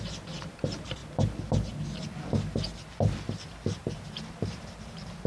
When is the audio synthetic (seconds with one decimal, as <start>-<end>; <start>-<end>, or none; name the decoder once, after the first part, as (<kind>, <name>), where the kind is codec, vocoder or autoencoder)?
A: 0.0-1.0 (vocoder, BigVGAN v2); 4.2-5.3